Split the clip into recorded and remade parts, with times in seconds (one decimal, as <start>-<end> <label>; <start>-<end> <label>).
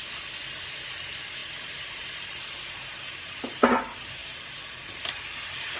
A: 0.0-1.4 recorded; 1.4-2.6 remade; 2.6-4.2 recorded; 4.2-5.1 remade; 5.1-5.8 recorded